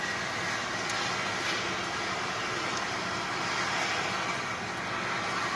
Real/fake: real